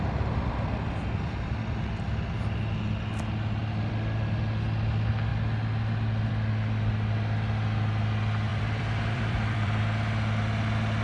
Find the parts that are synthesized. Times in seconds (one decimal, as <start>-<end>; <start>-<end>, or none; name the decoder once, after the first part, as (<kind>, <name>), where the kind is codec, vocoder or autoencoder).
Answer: 3.6-4.4 (vocoder, BigVGAN v2); 8.5-9.8